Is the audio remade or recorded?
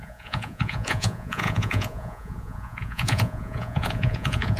remade